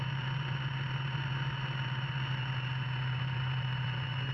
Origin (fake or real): real